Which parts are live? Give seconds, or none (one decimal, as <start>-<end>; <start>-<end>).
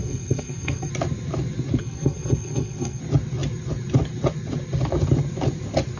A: 0.9-1.8; 3.0-6.0